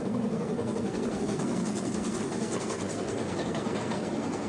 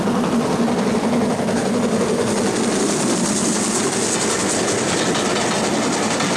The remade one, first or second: first